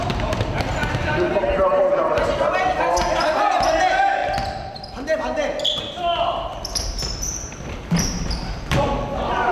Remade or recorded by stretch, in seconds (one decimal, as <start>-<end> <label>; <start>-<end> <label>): 0.0-0.8 recorded; 0.8-2.0 remade; 2.0-4.2 recorded; 4.2-5.8 remade; 5.8-6.5 recorded; 6.5-8.9 remade; 8.9-9.5 recorded